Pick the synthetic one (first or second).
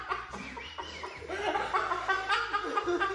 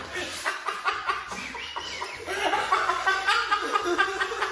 second